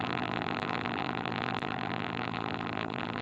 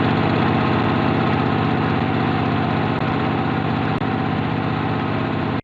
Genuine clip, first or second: second